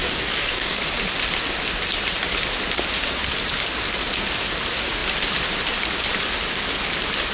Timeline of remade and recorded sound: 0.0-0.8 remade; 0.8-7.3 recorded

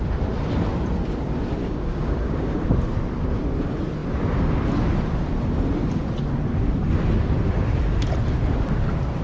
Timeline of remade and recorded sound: 0.0-1.6 recorded; 1.6-2.5 remade; 2.5-9.2 recorded

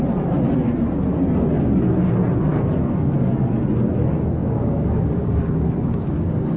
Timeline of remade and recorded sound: 0.0-4.4 recorded; 4.4-6.6 remade

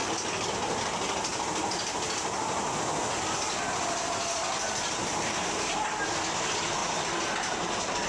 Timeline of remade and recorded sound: 0.0-0.5 remade; 0.5-8.1 recorded

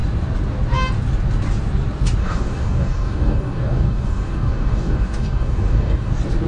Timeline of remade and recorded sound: 0.0-2.2 recorded; 2.2-6.1 remade; 6.1-6.5 recorded

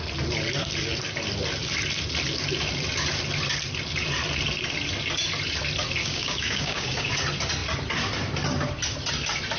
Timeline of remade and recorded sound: 0.0-6.0 recorded; 6.0-7.1 remade; 7.1-9.6 recorded